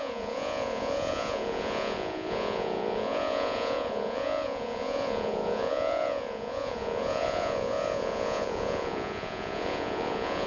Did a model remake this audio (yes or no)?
yes